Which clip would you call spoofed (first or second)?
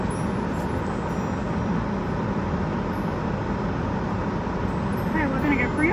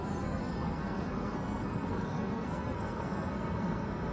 second